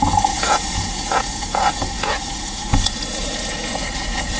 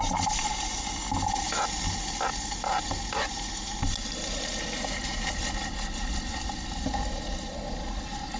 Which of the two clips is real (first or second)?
second